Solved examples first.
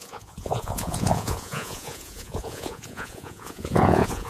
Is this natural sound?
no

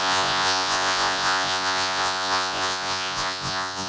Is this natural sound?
no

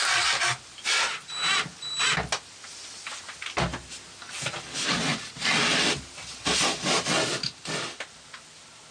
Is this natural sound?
yes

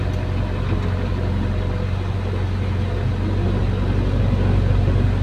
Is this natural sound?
yes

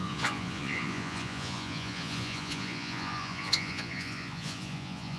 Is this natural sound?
no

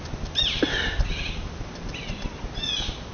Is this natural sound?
yes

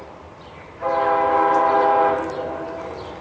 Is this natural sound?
yes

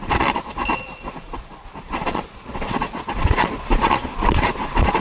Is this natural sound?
no